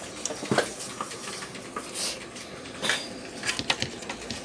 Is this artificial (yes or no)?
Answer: no